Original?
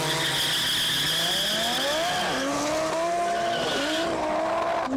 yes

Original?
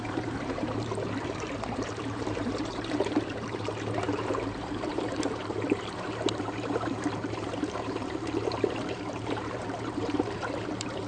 no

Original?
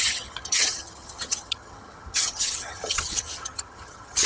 no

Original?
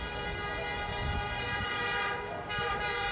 yes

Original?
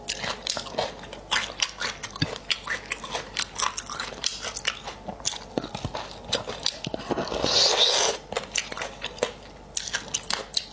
yes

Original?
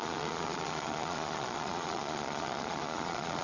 no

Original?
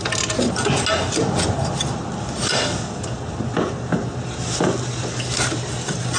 yes